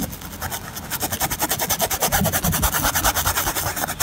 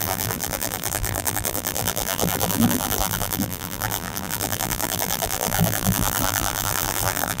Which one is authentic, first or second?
first